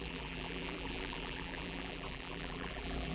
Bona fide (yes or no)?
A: no